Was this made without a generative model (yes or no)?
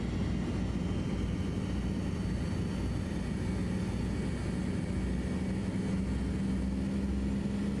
yes